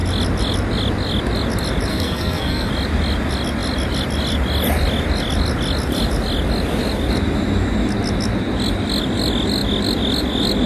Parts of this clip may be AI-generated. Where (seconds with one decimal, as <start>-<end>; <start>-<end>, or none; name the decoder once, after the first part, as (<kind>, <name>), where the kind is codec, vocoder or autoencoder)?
1.9-2.7 (codec, SNAC)